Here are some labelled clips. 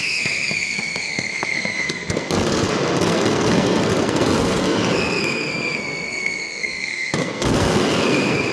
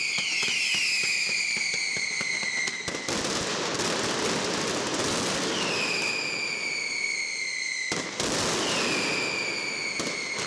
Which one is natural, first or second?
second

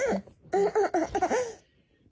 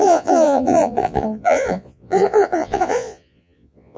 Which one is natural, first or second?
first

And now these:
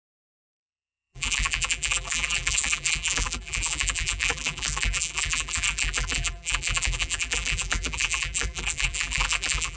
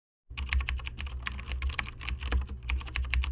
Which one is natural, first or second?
second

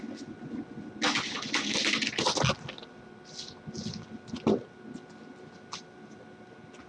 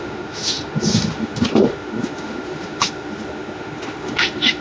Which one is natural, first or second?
first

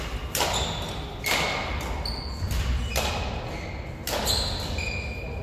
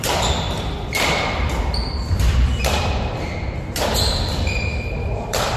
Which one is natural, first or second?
first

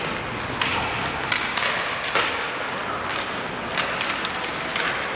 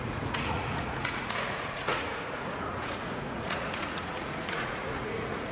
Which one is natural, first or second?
first